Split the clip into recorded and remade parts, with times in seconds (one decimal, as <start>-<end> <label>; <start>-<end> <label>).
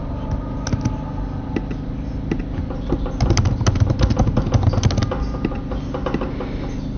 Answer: 0.0-7.0 recorded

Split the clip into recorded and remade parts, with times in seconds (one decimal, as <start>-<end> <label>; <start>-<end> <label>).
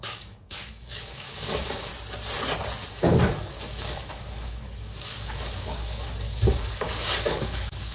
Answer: 0.0-1.9 remade; 1.9-2.9 recorded; 2.9-7.9 remade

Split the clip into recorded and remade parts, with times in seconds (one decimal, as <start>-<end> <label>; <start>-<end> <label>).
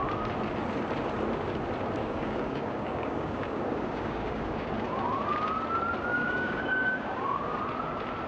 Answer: 0.0-2.0 recorded; 2.0-4.7 remade; 4.7-6.1 recorded; 6.1-7.6 remade; 7.6-8.3 recorded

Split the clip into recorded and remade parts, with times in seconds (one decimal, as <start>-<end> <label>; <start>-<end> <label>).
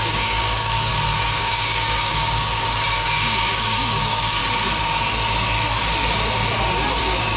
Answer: 0.0-0.9 remade; 0.9-1.4 recorded; 1.4-4.4 remade; 4.4-7.0 recorded; 7.0-7.4 remade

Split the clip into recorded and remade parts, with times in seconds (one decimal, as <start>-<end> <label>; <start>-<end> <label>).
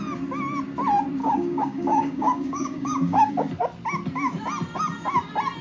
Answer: 0.0-1.2 recorded; 1.2-3.3 remade; 3.3-5.6 recorded